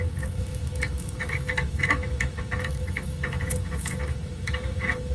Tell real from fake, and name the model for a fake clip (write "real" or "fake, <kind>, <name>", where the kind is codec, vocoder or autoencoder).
fake, autoencoder, DAC-VAE